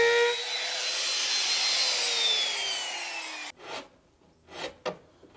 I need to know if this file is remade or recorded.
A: recorded